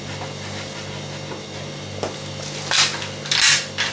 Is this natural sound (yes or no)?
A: yes